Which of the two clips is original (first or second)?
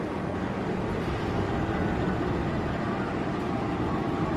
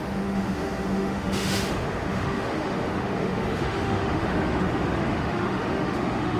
first